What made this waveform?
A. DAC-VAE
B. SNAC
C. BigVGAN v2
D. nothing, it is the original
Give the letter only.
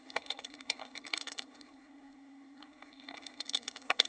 B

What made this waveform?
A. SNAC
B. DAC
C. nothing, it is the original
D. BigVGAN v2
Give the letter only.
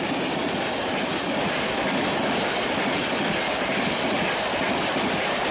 C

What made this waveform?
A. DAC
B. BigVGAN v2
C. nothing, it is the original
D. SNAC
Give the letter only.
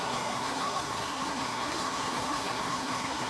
D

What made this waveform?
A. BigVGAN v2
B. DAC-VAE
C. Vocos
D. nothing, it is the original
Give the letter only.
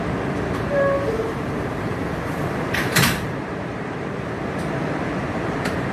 A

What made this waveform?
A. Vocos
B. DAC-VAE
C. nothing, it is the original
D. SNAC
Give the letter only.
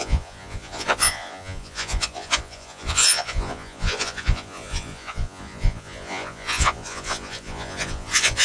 A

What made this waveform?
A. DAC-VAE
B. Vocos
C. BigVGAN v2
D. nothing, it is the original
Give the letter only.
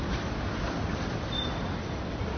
D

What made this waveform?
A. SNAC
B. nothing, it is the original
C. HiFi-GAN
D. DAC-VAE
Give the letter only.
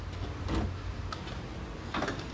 B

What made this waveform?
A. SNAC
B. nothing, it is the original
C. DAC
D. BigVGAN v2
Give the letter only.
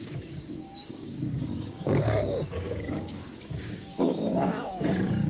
C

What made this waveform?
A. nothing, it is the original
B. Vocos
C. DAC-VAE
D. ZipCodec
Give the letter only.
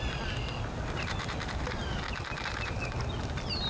A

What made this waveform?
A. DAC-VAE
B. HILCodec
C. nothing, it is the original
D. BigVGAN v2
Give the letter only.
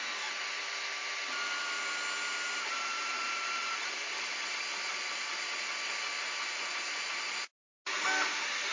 C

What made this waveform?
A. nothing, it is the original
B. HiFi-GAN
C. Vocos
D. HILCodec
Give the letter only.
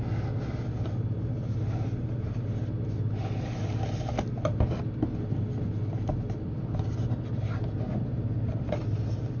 A